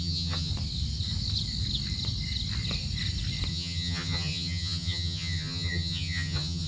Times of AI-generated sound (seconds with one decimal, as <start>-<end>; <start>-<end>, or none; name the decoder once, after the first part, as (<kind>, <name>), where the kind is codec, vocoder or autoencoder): 0.0-0.5 (vocoder, HiFi-GAN); 3.5-6.7